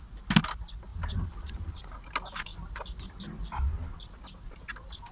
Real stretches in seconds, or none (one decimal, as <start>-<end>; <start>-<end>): 0.0-0.9; 1.6-5.1